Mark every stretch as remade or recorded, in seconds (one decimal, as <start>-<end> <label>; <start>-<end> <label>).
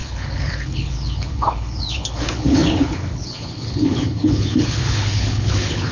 0.0-5.9 remade